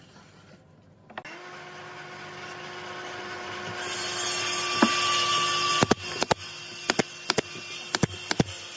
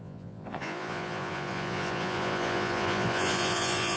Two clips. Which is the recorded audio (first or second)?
first